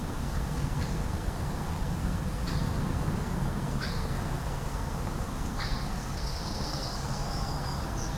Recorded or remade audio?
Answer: remade